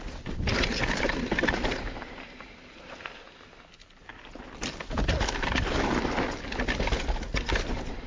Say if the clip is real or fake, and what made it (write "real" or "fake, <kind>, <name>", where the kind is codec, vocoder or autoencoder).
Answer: real